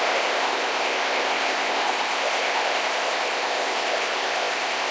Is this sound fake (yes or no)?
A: yes